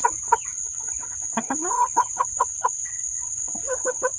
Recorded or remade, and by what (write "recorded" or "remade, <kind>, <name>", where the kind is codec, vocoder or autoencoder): remade, codec, HILCodec